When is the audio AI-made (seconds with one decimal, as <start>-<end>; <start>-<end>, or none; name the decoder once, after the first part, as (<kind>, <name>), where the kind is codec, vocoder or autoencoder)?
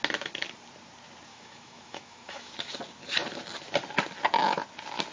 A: 1.3-2.5 (autoencoder, DAC-VAE)